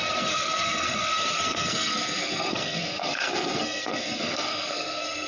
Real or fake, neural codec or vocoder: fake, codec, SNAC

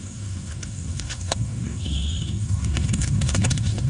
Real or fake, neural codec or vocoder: fake, codec, SNAC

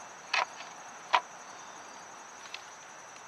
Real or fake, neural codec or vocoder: real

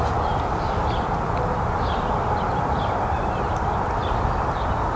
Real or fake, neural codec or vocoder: real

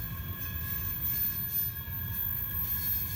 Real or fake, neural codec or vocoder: real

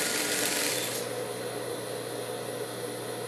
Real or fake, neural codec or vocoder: real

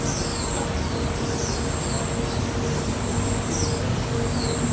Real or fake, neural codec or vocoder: real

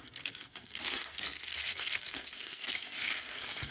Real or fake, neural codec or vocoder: fake, codec, SNAC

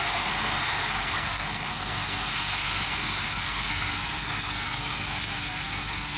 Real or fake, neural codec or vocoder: fake, codec, SNAC